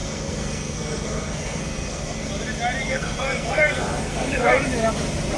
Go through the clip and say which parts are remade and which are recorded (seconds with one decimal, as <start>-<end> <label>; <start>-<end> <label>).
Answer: 0.0-2.3 remade; 2.3-2.9 recorded; 2.9-4.5 remade; 4.5-5.4 recorded